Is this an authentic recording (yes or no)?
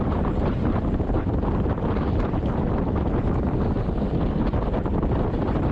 yes